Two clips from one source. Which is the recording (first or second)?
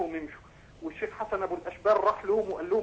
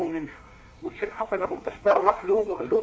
first